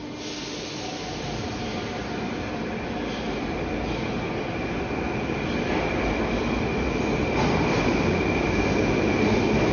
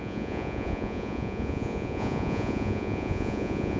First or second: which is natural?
first